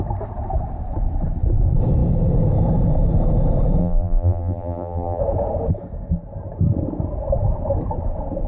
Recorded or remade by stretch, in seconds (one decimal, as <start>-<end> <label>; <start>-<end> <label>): 0.0-3.8 recorded; 3.8-5.2 remade; 5.2-8.5 recorded